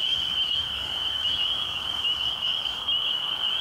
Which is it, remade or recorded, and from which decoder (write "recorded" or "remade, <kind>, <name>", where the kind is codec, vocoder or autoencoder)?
remade, codec, DAC